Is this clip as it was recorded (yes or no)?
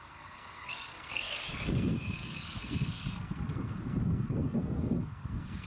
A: no